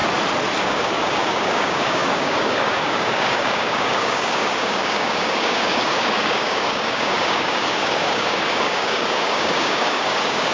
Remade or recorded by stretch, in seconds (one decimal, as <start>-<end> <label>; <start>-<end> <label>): 0.0-0.6 recorded; 0.6-10.5 remade